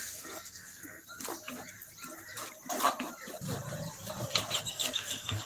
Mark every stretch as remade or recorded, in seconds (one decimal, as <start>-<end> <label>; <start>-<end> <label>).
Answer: 0.0-1.3 remade; 1.3-4.6 recorded; 4.6-5.5 remade